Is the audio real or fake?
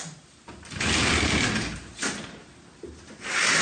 real